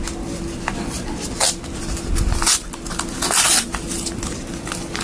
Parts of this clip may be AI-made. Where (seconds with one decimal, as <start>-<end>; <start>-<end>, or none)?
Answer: none